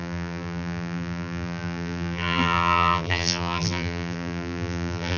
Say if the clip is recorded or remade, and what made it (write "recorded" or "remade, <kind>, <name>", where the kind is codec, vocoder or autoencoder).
remade, vocoder, BigVGAN v2